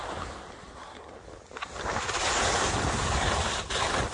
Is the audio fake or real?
real